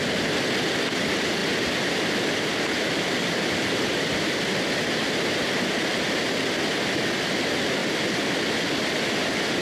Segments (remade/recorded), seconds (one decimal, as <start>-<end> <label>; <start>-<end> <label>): 0.0-1.4 recorded; 1.4-4.6 remade; 4.6-7.8 recorded; 7.8-8.5 remade; 8.5-9.6 recorded